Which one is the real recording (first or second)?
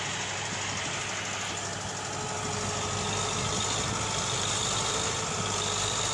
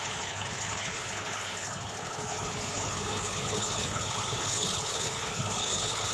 first